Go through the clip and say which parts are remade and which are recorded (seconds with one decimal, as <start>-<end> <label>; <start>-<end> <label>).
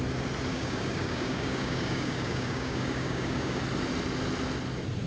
0.0-0.5 recorded; 0.5-3.6 remade; 3.6-5.1 recorded